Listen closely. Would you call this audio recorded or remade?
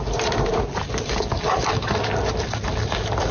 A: recorded